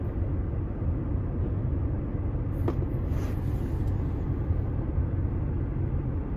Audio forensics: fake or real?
real